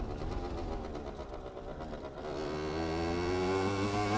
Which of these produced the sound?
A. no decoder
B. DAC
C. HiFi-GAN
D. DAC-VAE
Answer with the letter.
A